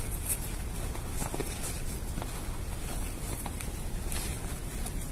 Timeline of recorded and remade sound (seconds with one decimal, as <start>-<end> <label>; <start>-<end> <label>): 0.0-5.1 recorded